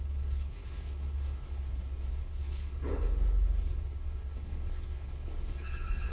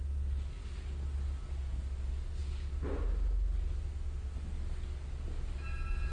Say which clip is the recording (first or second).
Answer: second